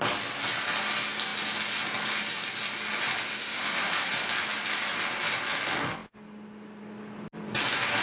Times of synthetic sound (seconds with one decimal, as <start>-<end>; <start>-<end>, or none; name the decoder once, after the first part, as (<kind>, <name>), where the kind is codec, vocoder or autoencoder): 3.3-4.1 (autoencoder, DAC-VAE)